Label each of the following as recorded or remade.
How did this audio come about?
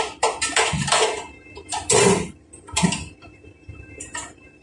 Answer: remade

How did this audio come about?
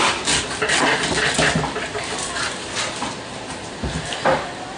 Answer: remade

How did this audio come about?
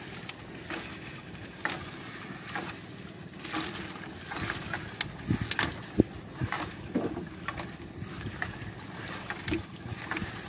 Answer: recorded